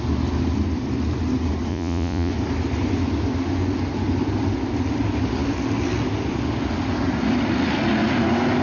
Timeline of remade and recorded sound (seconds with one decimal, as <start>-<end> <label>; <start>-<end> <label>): 0.0-1.7 recorded; 1.7-2.3 remade; 2.3-8.6 recorded